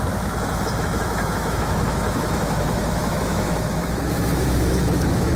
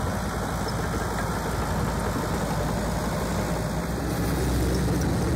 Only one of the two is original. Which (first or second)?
second